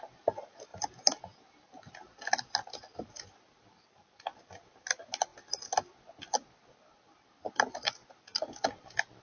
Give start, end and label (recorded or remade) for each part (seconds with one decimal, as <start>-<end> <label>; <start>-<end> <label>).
0.0-9.2 recorded